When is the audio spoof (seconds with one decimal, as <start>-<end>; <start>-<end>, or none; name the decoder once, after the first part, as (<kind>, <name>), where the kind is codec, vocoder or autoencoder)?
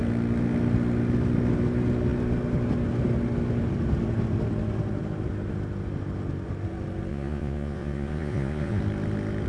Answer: 7.1-8.8 (vocoder, Vocos)